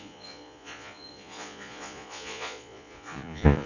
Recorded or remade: remade